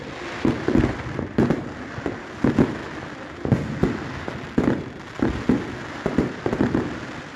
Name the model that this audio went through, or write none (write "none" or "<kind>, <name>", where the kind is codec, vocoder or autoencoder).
none